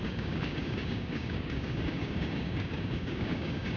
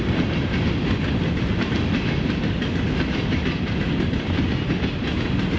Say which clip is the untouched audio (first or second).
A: second